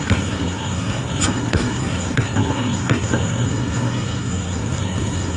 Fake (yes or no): yes